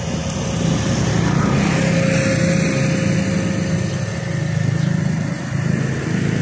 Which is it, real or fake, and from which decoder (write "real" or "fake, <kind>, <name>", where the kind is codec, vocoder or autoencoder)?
real